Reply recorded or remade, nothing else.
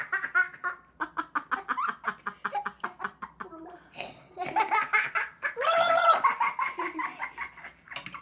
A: recorded